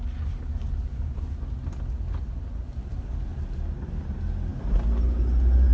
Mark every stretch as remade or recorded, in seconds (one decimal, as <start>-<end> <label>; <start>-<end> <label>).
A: 0.0-5.7 recorded